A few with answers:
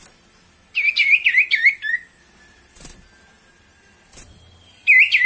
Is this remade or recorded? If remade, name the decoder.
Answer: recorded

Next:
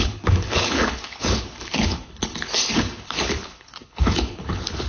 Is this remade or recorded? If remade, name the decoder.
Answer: remade, codec, HILCodec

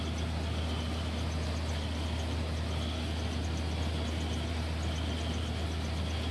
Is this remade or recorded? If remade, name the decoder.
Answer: recorded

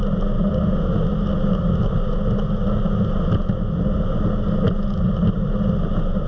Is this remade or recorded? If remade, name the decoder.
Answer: recorded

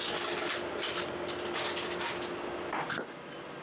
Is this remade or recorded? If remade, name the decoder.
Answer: recorded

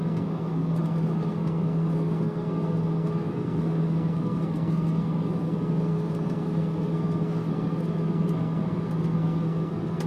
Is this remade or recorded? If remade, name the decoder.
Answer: remade, codec, SNAC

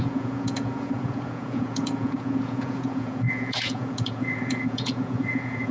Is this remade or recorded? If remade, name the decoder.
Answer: remade, vocoder, Vocos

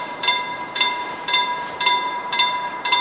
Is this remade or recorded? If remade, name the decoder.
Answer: remade, vocoder, BigVGAN v2